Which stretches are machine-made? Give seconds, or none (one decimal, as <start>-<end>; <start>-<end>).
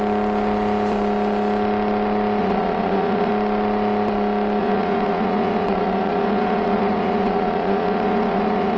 2.4-3.3; 4.6-8.8